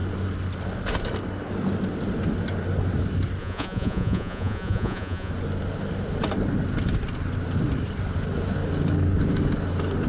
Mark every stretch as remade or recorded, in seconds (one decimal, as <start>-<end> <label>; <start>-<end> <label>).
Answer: 0.0-3.4 recorded; 3.4-5.3 remade; 5.3-10.1 recorded